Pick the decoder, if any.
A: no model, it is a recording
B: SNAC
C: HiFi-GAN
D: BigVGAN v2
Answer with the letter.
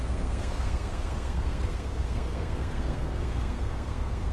B